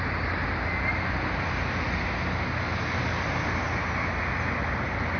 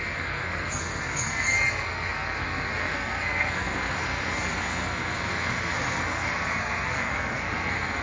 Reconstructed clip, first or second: second